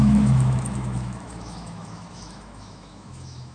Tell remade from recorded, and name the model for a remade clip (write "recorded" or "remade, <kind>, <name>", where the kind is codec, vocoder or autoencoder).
remade, autoencoder, DAC-VAE